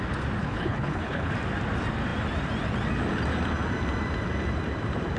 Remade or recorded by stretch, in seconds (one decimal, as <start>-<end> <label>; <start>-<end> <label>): 0.0-0.4 recorded; 0.4-1.3 remade; 1.3-5.2 recorded